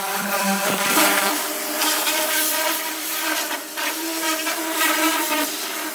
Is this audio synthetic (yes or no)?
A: yes